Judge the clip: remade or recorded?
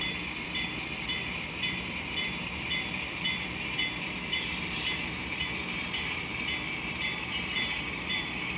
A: remade